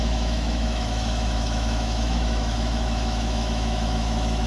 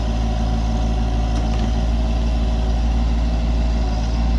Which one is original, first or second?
second